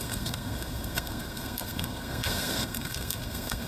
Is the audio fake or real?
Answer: fake